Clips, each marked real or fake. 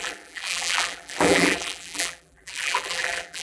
fake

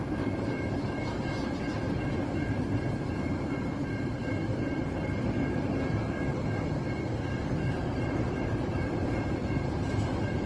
fake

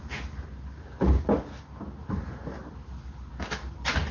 real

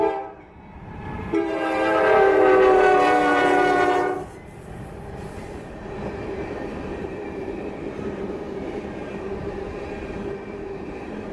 fake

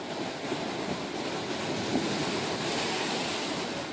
real